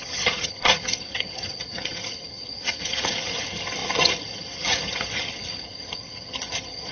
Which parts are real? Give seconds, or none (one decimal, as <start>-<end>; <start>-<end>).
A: none